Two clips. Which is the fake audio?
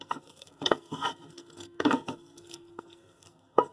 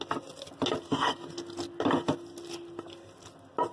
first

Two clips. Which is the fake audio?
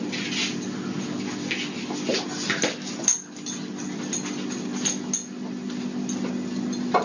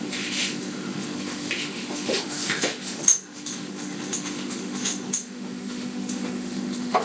second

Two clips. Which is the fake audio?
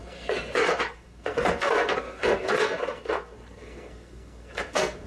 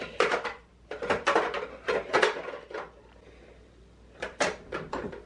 first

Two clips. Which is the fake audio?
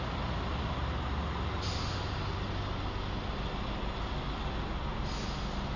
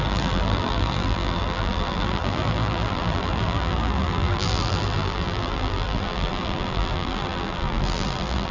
second